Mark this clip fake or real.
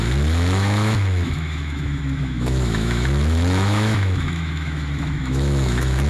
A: fake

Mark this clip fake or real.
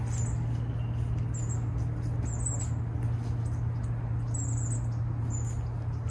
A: real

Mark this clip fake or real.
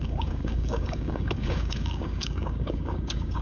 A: fake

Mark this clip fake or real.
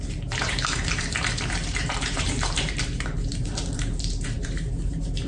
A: fake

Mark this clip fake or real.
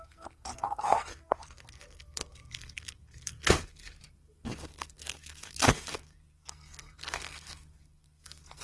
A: fake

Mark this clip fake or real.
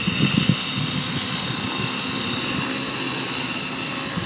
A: real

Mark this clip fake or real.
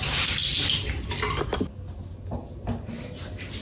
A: real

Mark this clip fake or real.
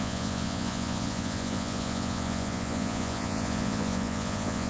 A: fake